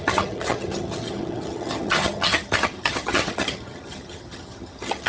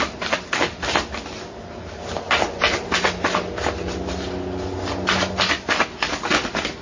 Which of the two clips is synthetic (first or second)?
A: first